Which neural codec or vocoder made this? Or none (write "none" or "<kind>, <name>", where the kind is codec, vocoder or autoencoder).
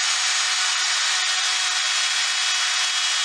none